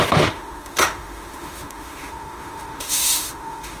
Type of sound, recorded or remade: remade